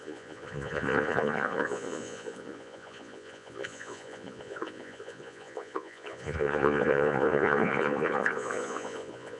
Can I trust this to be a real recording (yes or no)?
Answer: no